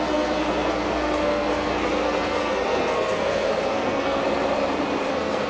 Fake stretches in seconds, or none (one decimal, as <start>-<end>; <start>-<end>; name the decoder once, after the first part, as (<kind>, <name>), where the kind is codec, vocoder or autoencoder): 0.0-4.2 (codec, SNAC); 5.1-5.5